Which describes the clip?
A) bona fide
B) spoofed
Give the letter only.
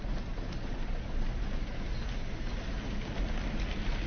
A